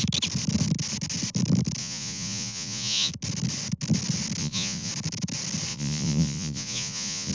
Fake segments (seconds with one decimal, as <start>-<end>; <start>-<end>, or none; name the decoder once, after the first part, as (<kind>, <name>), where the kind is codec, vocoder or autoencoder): 1.8-3.1 (vocoder, Vocos); 4.4-4.9; 5.7-7.3